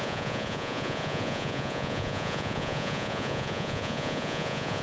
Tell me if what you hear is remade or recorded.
remade